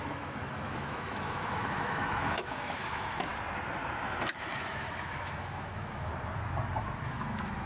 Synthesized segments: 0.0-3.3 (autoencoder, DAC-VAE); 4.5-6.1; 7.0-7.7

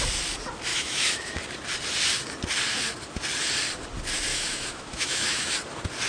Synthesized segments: 0.7-1.4 (autoencoder, DAC-VAE); 4.3-5.5

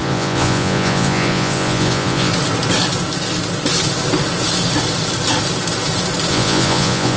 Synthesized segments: 0.0-2.3 (vocoder, Vocos); 6.3-7.2

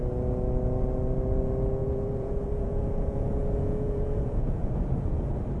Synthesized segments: 1.8-4.8 (vocoder, Vocos)

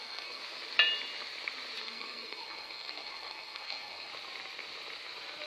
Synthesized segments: 0.0-0.4 (codec, SNAC); 1.8-4.1

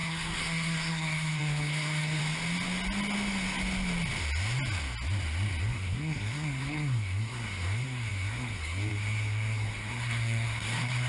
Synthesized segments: 0.0-2.2 (codec, SNAC); 5.6-11.1